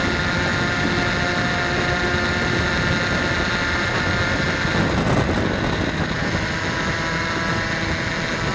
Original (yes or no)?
yes